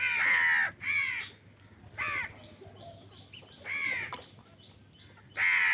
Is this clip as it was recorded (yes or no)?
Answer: yes